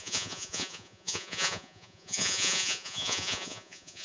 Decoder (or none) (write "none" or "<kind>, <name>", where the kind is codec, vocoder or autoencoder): vocoder, Vocos